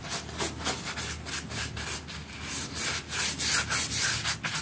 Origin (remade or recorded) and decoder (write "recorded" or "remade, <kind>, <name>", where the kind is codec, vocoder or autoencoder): recorded